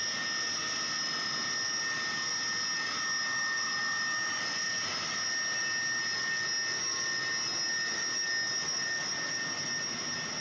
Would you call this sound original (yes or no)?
yes